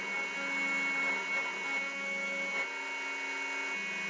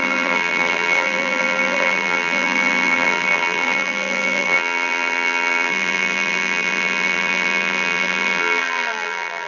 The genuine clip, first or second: first